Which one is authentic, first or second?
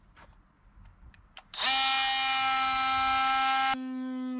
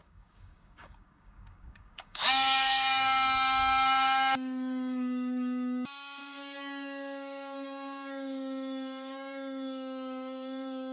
first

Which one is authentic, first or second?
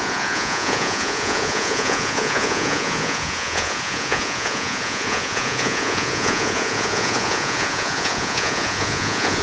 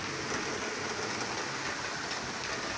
second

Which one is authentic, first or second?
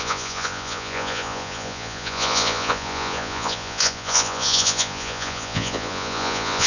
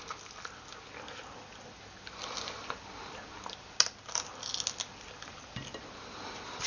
second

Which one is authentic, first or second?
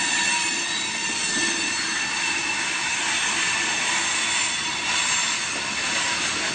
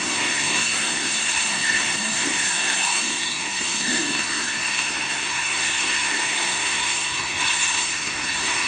first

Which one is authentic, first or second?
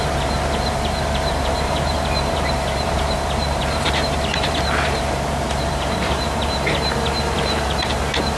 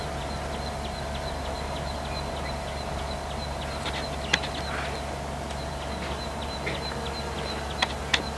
second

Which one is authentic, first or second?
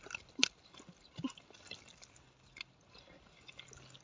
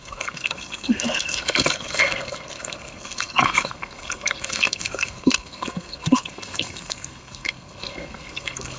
first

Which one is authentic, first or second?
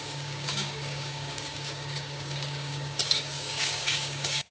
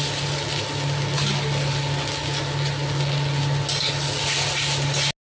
second